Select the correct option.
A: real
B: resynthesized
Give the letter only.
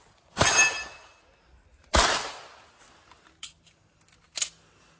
A